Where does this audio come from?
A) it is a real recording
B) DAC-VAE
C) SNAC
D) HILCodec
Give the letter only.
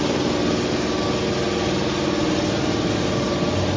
A